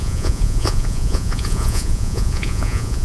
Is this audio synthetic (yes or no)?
yes